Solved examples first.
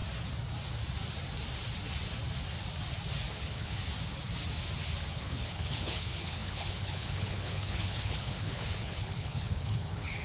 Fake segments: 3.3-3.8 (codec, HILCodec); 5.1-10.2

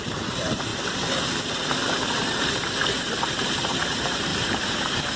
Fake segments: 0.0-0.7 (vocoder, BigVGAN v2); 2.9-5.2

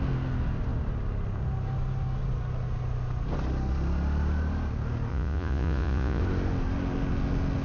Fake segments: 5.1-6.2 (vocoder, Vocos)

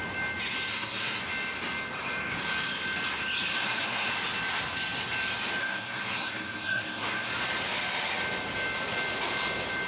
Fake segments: 0.7-1.2 (codec, SNAC); 3.5-4.1; 5.6-7.3

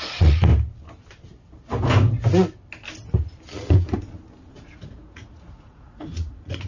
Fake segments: 0.0-0.5 (vocoder, Vocos); 4.5-6.7